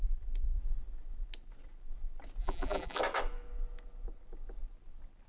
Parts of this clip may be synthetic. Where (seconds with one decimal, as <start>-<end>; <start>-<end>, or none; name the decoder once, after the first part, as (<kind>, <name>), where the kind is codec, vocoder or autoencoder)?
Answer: 2.4-3.0 (vocoder, BigVGAN v2)